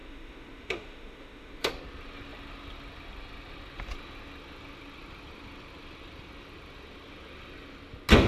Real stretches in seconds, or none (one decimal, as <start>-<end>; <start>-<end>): 1.7-8.3